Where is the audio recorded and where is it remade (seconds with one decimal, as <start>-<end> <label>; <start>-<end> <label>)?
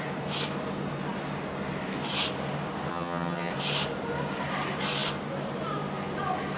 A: 0.0-2.9 recorded; 2.9-3.5 remade; 3.5-6.6 recorded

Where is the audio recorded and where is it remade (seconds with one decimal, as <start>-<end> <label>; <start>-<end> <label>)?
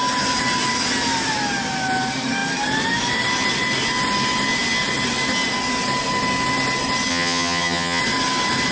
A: 0.0-7.1 recorded; 7.1-8.0 remade; 8.0-8.7 recorded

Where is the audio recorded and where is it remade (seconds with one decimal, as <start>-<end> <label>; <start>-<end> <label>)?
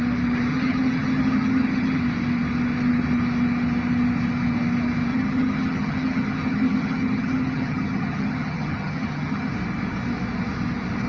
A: 0.0-0.5 recorded; 0.5-2.0 remade; 2.0-5.1 recorded; 5.1-9.5 remade; 9.5-11.1 recorded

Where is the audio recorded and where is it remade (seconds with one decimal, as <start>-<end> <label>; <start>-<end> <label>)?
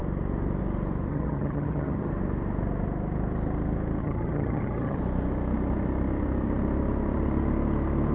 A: 0.0-1.1 recorded; 1.1-2.1 remade; 2.1-4.0 recorded; 4.0-5.0 remade; 5.0-8.1 recorded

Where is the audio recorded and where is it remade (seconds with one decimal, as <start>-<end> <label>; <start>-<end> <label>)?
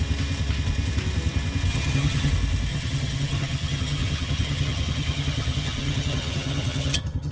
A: 0.0-1.7 recorded; 1.7-2.3 remade; 2.3-2.7 recorded; 2.7-7.3 remade